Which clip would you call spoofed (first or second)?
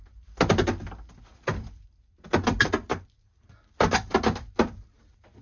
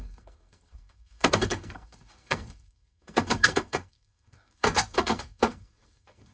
second